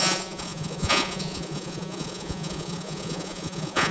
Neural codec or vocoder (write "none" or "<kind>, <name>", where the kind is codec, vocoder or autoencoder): vocoder, Vocos